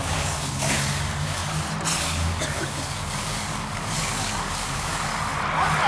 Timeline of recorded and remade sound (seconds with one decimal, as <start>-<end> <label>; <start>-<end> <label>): 0.0-1.4 remade; 1.4-2.0 recorded; 2.0-5.1 remade; 5.1-5.9 recorded